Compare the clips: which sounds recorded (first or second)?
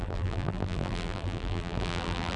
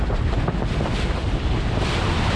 second